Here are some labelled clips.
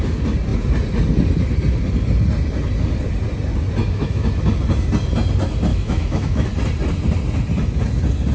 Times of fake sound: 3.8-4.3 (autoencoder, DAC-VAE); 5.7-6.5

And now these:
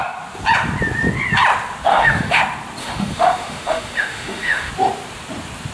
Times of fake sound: 1.9-2.4 (autoencoder, DAC-VAE); 2.8-4.7

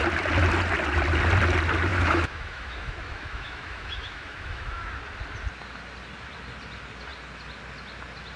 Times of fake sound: 1.9-4.9 (autoencoder, DAC-VAE)